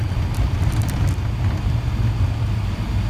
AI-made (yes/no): no